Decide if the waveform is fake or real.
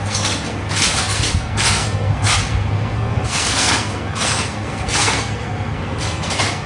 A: fake